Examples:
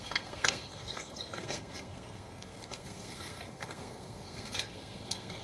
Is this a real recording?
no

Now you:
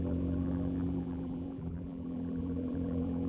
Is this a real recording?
no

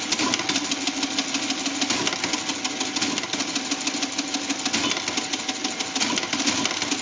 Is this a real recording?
yes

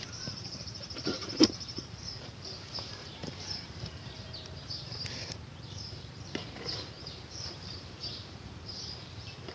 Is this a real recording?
no